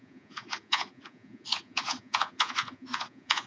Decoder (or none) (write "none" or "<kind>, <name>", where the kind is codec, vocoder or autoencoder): vocoder, Vocos